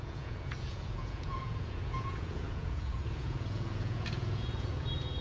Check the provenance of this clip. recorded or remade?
remade